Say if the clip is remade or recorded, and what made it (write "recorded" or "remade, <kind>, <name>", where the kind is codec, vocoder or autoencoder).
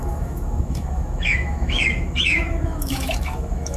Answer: remade, autoencoder, DAC-VAE